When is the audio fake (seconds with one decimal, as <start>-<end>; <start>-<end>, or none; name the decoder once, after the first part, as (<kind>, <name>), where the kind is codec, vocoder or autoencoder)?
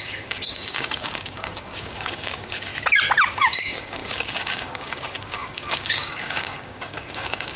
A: 0.0-2.7 (codec, DAC); 3.3-7.6